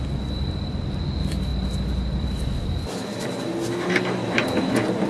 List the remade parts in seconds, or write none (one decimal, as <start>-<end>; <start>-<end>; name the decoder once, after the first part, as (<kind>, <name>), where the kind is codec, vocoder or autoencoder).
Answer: none